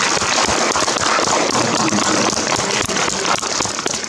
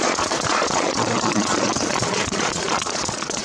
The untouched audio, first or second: first